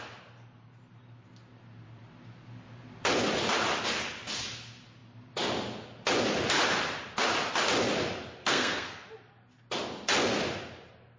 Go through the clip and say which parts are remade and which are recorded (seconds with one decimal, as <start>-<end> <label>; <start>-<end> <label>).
0.0-8.4 recorded; 8.4-9.1 remade; 9.1-11.2 recorded